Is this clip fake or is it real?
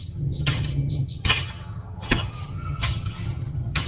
fake